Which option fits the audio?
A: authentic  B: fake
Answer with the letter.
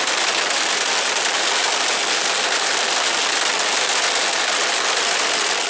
A